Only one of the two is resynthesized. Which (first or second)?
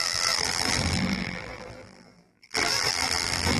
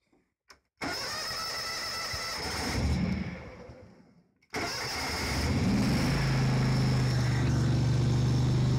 first